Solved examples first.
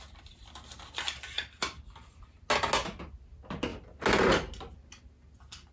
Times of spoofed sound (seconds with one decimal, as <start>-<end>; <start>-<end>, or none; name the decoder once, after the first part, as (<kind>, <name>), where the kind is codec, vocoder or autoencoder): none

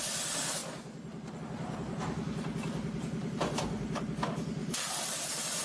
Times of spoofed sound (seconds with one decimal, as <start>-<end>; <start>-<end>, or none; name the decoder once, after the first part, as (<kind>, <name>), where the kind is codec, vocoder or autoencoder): 3.2-4.0 (vocoder, BigVGAN v2); 4.6-5.6

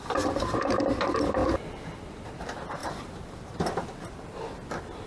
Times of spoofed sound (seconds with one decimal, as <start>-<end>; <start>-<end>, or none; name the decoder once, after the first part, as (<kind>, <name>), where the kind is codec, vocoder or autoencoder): 1.4-2.4 (vocoder, BigVGAN v2); 2.8-3.7

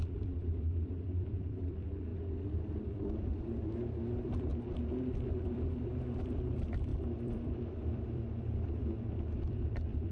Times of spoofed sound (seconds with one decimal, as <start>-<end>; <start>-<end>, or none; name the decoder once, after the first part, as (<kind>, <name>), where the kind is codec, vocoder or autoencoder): 0.0-2.1 (vocoder, BigVGAN v2); 2.7-4.5; 5.1-10.1

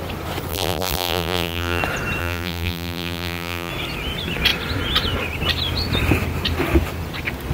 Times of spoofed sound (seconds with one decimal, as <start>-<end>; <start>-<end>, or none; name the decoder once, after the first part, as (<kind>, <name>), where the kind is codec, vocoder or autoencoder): 0.5-1.8 (vocoder, BigVGAN v2); 2.2-3.7

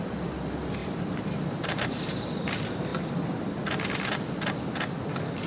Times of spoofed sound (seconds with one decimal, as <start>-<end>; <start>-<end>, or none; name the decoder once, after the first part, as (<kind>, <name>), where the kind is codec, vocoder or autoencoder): 0.8-2.0 (vocoder, BigVGAN v2)

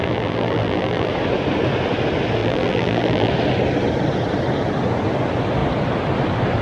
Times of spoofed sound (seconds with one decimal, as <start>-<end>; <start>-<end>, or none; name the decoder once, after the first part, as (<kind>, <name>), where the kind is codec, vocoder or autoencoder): 0.0-1.1 (vocoder, BigVGAN v2); 2.4-3.3

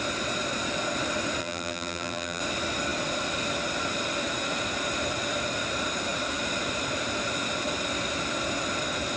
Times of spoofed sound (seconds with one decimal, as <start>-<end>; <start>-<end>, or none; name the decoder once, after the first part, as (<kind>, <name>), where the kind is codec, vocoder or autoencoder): 1.4-2.4 (vocoder, BigVGAN v2)